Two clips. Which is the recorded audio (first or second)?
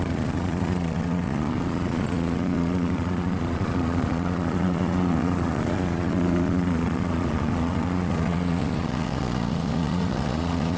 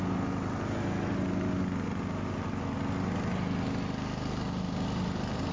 second